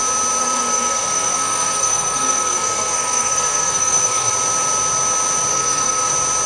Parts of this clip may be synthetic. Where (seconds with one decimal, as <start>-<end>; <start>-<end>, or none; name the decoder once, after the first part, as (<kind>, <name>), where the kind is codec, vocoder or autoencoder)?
0.4-4.3 (codec, SNAC); 5.5-6.1